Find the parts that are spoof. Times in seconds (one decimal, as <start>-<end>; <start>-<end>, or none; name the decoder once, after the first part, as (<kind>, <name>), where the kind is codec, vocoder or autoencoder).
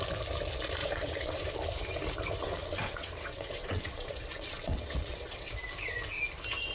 0.8-1.5 (vocoder, WaveNeXt); 2.4-5.5